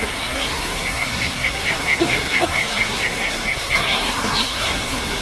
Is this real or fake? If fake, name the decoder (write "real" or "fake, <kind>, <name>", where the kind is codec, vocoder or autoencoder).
fake, codec, SNAC